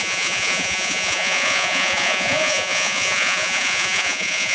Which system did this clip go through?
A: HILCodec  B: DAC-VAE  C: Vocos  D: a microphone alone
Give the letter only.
C